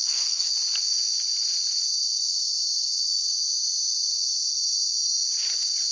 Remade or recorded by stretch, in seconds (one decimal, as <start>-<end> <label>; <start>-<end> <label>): 0.0-0.5 remade; 0.5-5.9 recorded

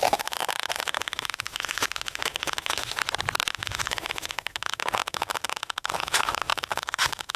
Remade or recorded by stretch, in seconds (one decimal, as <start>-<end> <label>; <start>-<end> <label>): 0.0-3.0 remade; 3.0-3.5 recorded; 3.5-7.4 remade

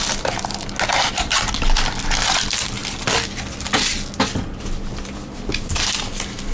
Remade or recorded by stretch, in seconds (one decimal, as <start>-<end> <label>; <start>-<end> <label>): 0.0-6.5 recorded

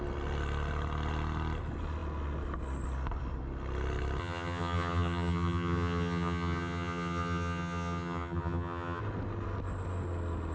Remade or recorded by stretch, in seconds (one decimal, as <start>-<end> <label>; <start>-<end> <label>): 0.0-4.2 recorded; 4.2-9.0 remade; 9.0-10.5 recorded

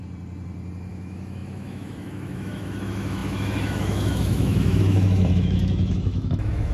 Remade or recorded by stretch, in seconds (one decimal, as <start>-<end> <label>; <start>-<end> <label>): 0.0-0.9 recorded; 0.9-6.7 remade

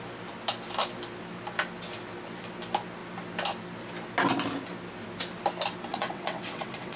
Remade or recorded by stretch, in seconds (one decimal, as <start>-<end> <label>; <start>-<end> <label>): 0.0-5.9 recorded; 5.9-7.0 remade

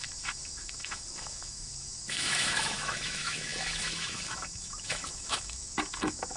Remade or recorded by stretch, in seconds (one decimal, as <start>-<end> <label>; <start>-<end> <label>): 0.0-6.4 remade

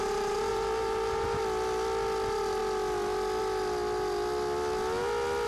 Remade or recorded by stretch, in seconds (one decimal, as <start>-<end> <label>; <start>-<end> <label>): 0.0-0.5 recorded; 0.5-1.4 remade; 1.4-5.5 recorded